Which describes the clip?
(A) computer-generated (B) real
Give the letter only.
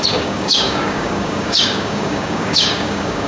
A